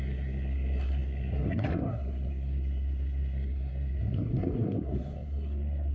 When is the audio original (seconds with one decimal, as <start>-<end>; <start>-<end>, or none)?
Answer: none

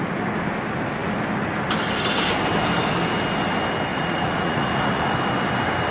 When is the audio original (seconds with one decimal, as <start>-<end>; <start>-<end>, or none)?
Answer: 0.0-3.9; 5.1-5.9

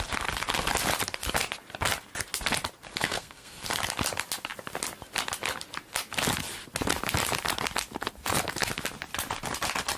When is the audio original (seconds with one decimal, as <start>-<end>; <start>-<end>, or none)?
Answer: 0.0-3.0; 3.6-10.0

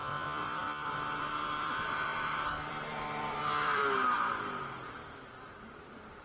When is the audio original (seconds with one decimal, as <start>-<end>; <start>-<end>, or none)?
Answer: 3.8-5.7

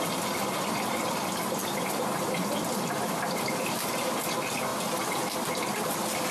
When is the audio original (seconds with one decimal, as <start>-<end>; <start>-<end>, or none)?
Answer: 0.0-1.6; 2.2-6.3

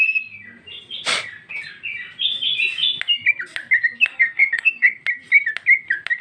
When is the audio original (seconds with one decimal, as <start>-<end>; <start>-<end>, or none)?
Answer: 0.0-4.1; 5.0-6.2